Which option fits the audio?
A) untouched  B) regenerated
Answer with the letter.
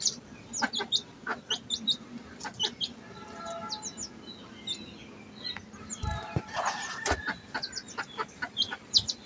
A